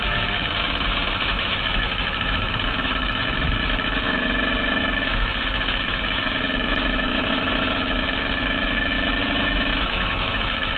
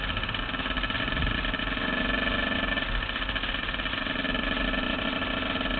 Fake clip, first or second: first